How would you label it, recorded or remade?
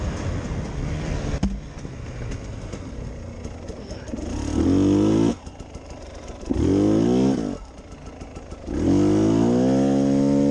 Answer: recorded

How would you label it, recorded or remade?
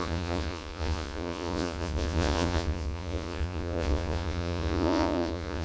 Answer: remade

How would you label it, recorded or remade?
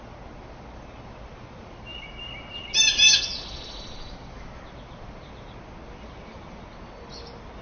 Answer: recorded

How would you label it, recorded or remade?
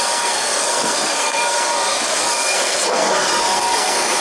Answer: remade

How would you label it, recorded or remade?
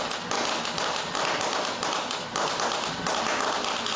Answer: recorded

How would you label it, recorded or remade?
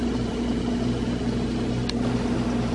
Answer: recorded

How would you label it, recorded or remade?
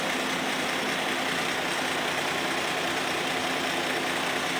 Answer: recorded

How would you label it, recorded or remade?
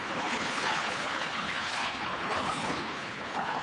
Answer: remade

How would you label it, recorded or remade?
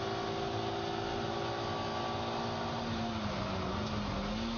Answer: recorded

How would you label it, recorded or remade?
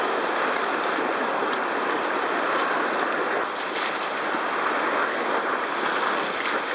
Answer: recorded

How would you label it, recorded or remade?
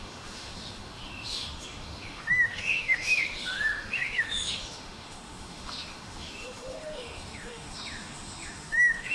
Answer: remade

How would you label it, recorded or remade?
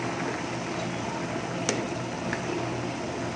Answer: recorded